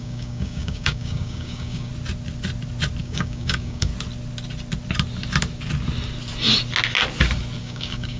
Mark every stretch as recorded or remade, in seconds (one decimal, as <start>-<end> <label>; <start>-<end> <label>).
0.0-1.9 remade; 1.9-3.0 recorded; 3.0-3.9 remade; 3.9-7.6 recorded; 7.6-8.2 remade